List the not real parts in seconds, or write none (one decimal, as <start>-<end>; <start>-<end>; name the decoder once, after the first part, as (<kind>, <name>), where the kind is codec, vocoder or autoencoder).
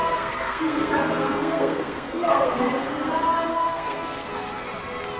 0.0-3.1 (codec, SNAC); 3.5-4.3